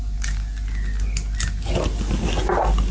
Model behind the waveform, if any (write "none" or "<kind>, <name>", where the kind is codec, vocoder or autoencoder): none